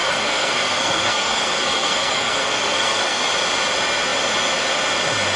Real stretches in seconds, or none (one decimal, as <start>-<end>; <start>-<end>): 3.2-5.4